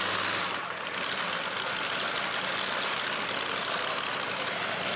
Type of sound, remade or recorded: recorded